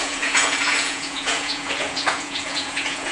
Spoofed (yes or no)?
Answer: yes